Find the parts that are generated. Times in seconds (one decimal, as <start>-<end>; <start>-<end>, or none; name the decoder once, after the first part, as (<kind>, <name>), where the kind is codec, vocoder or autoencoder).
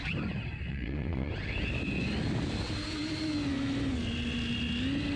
0.7-1.3 (vocoder, Vocos)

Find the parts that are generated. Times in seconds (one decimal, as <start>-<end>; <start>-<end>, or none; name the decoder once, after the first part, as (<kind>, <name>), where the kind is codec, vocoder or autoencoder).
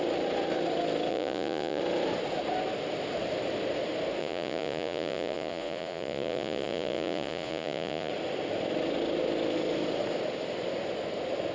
1.1-1.8 (vocoder, Vocos); 4.2-8.1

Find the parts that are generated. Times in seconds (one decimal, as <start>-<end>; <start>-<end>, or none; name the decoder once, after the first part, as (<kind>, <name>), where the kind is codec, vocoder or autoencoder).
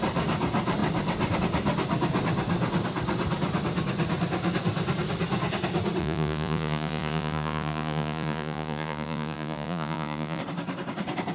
6.0-10.4 (vocoder, Vocos)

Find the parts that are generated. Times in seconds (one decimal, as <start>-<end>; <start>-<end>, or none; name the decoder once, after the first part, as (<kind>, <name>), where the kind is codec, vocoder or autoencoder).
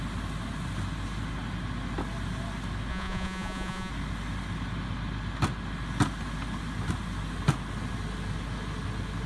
2.9-3.9 (vocoder, Vocos)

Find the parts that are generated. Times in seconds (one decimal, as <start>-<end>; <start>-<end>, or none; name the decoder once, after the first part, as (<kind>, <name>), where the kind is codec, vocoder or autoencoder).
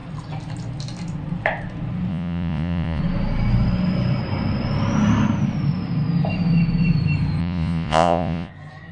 2.1-3.0 (vocoder, Vocos); 7.4-8.5